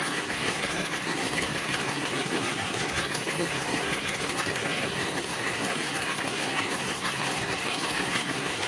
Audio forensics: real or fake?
fake